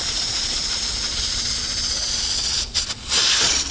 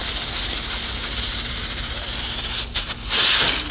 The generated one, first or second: first